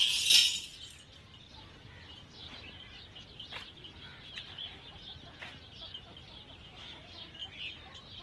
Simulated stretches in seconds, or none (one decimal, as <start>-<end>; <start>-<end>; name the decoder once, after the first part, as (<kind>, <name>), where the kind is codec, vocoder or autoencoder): none